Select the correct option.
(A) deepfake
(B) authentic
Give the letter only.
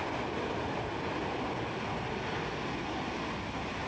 B